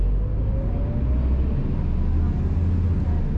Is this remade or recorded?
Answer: recorded